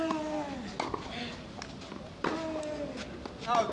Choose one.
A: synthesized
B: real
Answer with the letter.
B